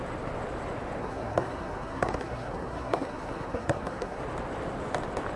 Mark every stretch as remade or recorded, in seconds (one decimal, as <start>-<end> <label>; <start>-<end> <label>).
0.0-1.0 recorded; 1.0-4.2 remade; 4.2-5.4 recorded